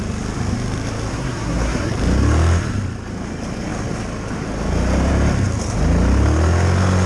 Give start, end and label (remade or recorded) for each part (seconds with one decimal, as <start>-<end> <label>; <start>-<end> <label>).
0.0-1.1 recorded; 1.1-1.9 remade; 1.9-7.1 recorded